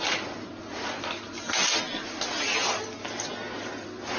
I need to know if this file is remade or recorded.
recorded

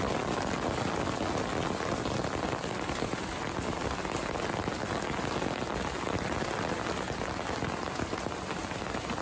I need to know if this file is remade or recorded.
recorded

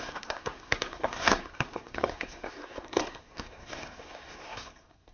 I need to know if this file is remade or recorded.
remade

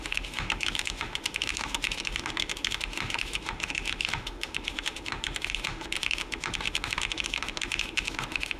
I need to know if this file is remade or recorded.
remade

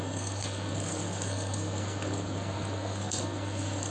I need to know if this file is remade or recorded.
remade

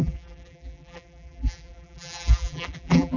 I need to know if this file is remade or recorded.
remade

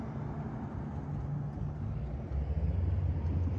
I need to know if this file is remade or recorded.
recorded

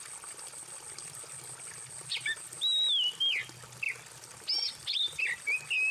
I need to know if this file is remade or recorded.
recorded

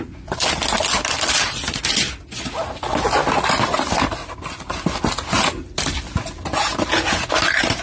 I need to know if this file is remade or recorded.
recorded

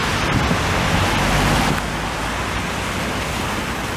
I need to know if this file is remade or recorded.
recorded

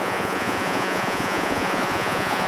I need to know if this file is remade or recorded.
remade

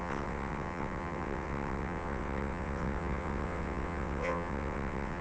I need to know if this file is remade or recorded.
remade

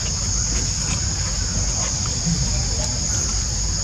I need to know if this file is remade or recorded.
recorded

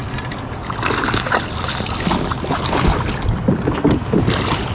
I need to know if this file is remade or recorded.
recorded